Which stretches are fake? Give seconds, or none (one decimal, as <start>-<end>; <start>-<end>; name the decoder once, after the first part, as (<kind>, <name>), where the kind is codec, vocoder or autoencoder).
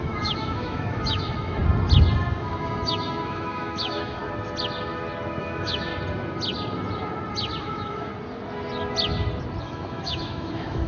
0.0-1.6 (autoencoder, DAC-VAE); 2.4-4.2; 5.4-5.9; 7.6-8.1; 9.6-10.9